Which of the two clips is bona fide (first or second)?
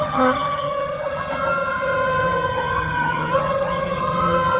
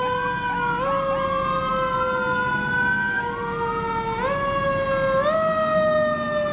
second